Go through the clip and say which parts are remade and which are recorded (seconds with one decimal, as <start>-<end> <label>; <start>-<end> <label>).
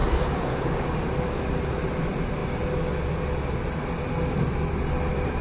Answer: 0.0-1.0 remade; 1.0-5.4 recorded